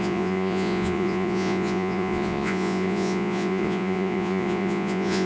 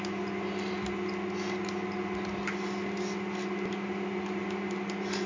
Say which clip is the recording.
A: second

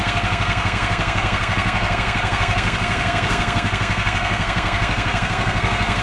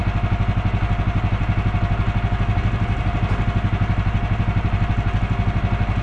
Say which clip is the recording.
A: second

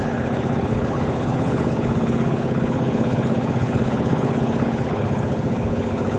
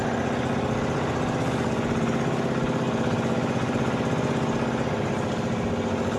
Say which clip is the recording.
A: second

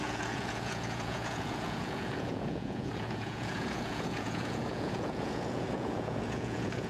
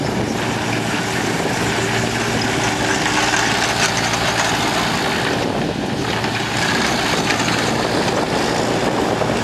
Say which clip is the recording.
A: second